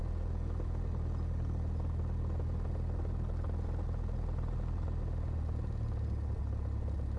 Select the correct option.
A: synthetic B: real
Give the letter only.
B